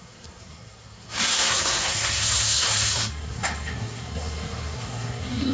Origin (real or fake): fake